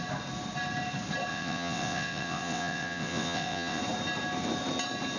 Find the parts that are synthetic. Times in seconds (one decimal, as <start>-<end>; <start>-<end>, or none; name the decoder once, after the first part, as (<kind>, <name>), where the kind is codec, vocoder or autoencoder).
1.3-3.8 (vocoder, WaveNeXt)